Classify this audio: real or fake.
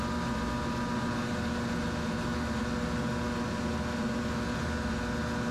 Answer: real